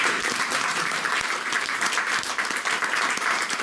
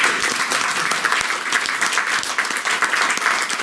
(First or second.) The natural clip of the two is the second